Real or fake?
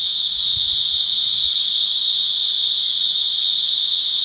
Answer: fake